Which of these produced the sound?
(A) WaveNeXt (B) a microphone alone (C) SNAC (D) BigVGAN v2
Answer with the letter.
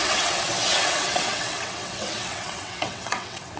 A